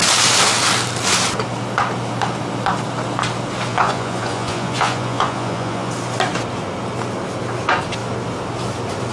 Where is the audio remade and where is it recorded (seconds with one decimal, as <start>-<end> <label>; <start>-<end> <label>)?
0.0-3.7 recorded; 3.7-5.9 remade; 5.9-9.1 recorded